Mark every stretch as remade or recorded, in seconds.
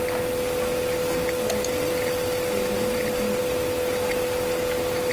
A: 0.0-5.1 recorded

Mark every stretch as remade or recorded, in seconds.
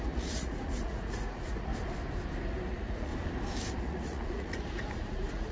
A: 0.0-1.7 remade; 1.7-2.7 recorded; 2.7-3.1 remade; 3.1-3.7 recorded; 3.7-5.5 remade